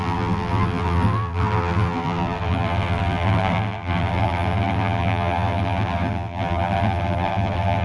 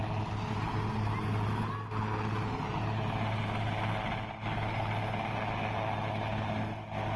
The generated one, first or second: first